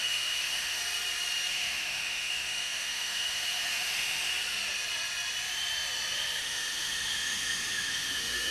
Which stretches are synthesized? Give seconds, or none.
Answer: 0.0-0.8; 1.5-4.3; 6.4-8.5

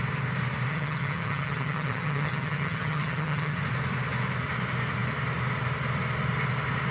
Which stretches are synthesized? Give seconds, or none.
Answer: 0.7-3.6

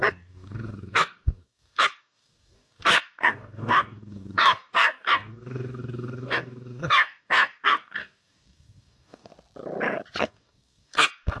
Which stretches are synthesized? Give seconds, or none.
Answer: 0.0-9.3; 10.2-11.4